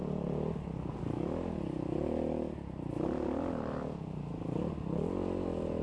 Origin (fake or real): real